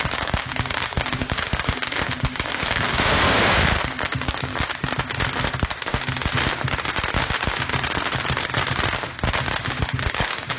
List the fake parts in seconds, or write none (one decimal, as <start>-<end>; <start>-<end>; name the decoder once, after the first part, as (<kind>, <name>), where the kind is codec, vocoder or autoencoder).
0.0-4.5 (codec, DAC); 9.7-10.6